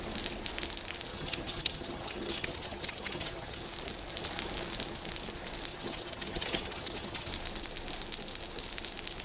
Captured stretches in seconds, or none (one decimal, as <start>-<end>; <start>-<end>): 0.0-1.1; 3.6-5.7; 7.3-9.2